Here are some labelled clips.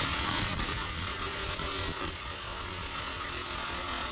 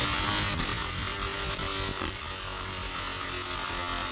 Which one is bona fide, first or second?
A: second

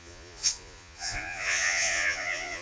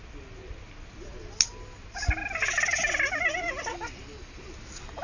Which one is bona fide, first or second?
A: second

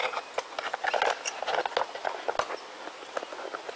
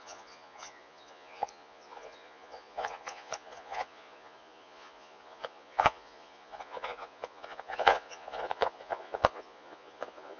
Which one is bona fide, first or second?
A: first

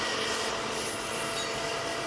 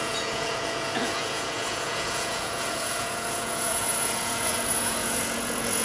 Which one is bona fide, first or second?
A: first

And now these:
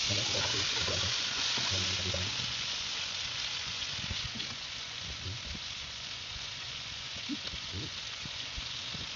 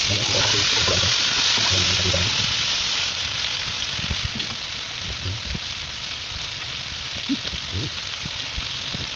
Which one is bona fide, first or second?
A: second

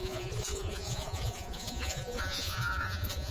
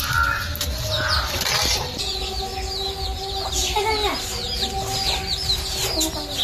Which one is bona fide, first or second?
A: second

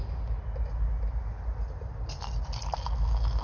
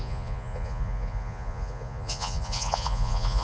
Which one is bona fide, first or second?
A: first